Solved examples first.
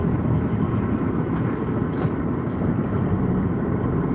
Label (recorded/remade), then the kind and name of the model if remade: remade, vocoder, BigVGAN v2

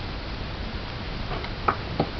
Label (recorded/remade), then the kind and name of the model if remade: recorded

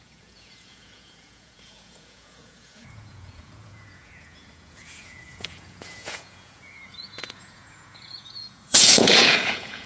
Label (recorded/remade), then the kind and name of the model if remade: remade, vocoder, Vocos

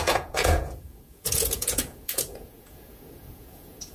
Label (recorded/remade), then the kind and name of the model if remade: remade, vocoder, Vocos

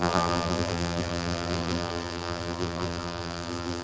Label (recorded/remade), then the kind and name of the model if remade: remade, vocoder, BigVGAN v2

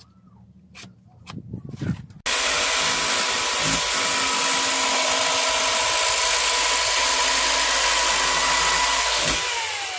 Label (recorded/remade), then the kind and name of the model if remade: recorded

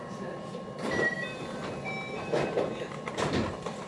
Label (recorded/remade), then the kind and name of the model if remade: remade, vocoder, BigVGAN v2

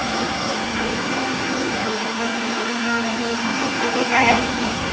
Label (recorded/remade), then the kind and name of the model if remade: remade, codec, SNAC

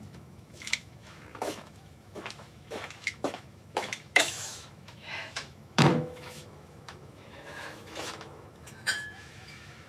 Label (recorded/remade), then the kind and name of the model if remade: remade, autoencoder, DAC-VAE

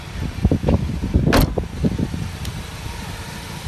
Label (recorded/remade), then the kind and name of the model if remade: recorded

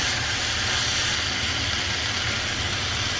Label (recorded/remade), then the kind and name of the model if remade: recorded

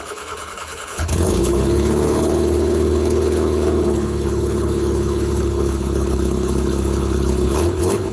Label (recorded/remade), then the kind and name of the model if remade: remade, codec, HILCodec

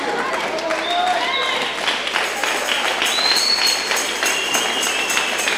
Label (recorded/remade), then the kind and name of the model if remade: recorded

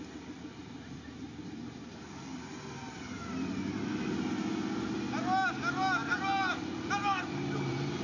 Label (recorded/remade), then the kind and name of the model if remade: recorded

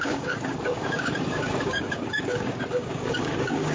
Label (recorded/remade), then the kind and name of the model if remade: remade, codec, DAC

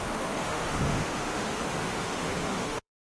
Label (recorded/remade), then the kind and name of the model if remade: remade, autoencoder, DAC-VAE